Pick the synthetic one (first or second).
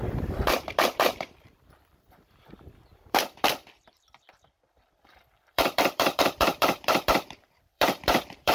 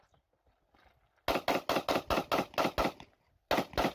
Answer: first